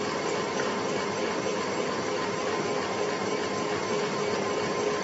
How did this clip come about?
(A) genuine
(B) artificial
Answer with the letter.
A